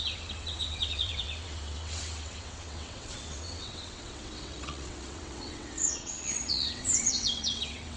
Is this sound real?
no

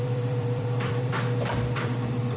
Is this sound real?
no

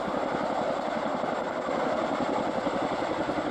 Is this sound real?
yes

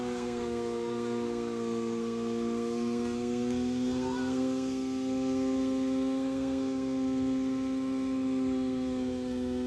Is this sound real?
no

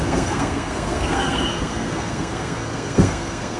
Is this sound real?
no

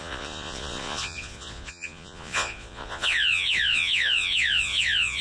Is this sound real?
no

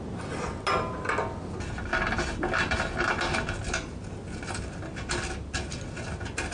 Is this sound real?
yes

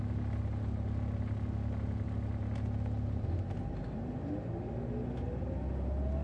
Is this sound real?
yes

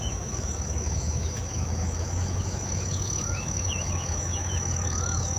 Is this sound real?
no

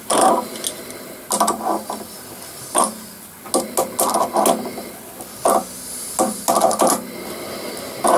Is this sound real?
yes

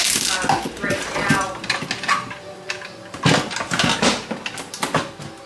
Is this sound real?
yes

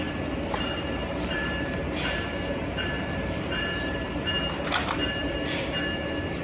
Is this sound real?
no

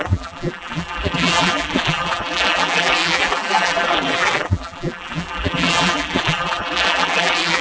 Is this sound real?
no